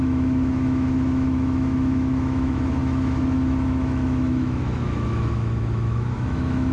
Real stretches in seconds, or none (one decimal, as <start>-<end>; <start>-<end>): none